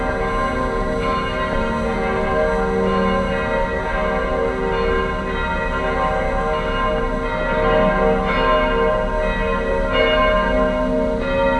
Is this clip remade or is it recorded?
recorded